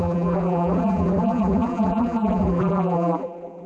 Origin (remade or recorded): remade